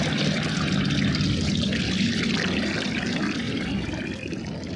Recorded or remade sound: remade